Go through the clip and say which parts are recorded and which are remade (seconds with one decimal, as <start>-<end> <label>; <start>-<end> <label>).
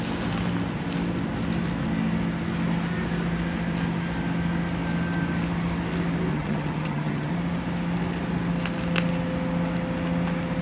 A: 0.0-6.3 recorded; 6.3-7.3 remade; 7.3-10.6 recorded